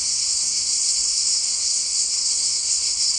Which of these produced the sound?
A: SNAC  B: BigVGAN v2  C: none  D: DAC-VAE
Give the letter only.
A